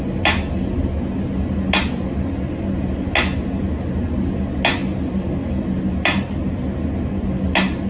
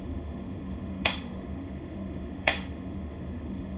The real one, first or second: first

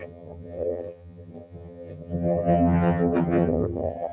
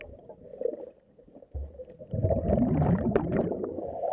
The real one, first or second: second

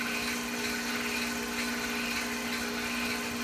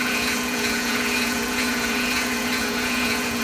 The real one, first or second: first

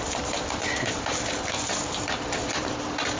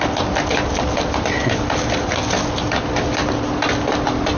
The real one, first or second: second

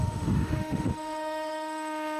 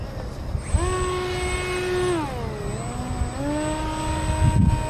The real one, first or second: second